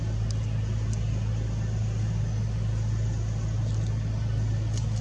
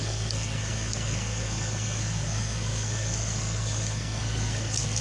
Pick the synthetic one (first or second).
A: second